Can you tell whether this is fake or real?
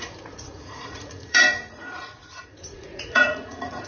fake